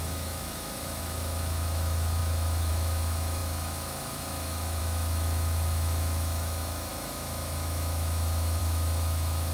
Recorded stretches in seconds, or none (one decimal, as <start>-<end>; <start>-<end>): none